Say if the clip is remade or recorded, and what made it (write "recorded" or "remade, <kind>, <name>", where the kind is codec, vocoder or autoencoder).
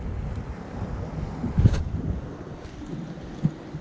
recorded